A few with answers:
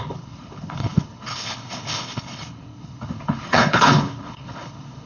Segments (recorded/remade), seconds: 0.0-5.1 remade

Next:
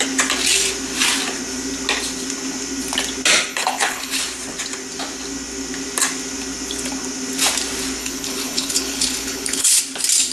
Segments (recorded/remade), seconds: 0.0-3.5 recorded; 3.5-4.2 remade; 4.2-8.0 recorded; 8.0-9.8 remade; 9.8-10.3 recorded

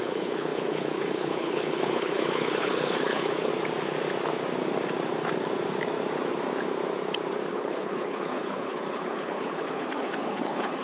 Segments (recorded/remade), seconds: 0.0-3.5 remade; 3.5-7.5 recorded; 7.5-10.8 remade

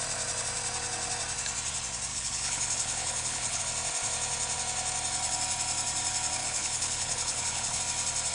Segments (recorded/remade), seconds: 0.0-2.1 recorded; 2.1-3.6 remade; 3.6-6.4 recorded; 6.4-7.8 remade; 7.8-8.3 recorded

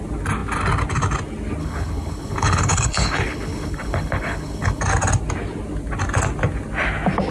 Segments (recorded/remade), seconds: 0.0-1.6 recorded; 1.6-4.8 remade; 4.8-7.3 recorded